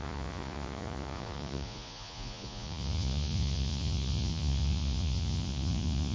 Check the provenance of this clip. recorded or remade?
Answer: remade